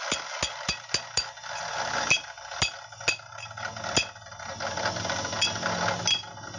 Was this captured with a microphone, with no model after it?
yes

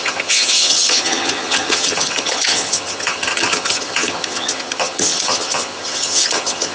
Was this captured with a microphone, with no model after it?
no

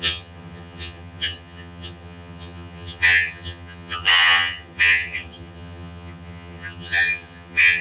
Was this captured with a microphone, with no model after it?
no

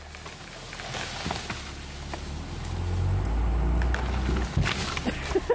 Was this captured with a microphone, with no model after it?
yes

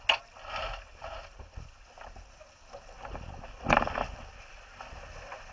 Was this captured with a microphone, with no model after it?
yes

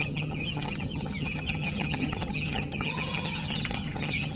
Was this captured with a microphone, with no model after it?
no